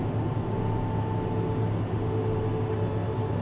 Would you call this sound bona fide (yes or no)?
yes